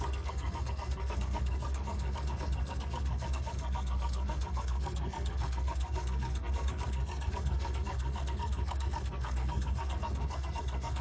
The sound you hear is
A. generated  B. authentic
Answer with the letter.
A